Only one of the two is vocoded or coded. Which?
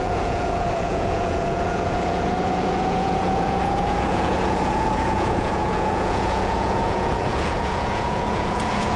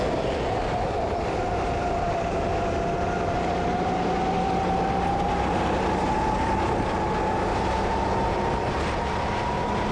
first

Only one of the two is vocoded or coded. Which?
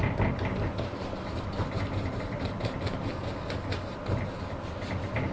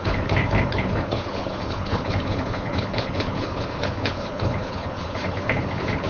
second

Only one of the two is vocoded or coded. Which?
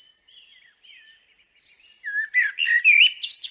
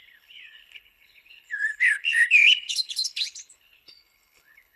second